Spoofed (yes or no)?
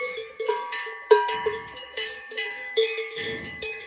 yes